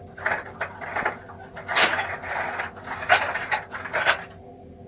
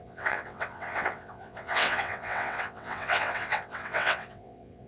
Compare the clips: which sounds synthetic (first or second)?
second